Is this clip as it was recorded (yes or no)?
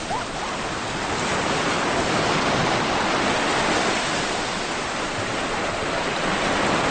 yes